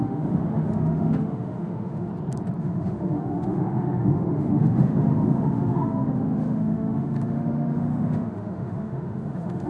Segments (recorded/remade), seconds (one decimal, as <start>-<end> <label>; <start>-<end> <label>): 0.0-2.1 remade; 2.1-2.6 recorded; 2.6-9.7 remade